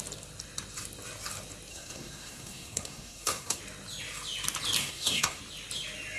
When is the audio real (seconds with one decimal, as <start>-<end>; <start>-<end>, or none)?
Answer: 0.0-1.7; 3.6-4.8; 5.4-6.2